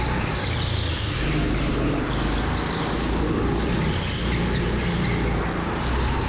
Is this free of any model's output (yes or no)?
yes